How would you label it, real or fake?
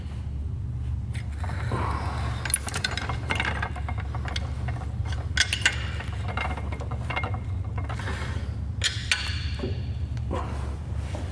real